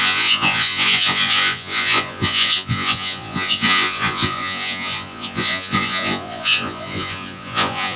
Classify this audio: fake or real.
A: fake